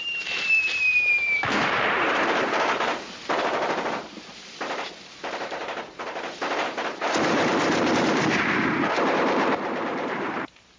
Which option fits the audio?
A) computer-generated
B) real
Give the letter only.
A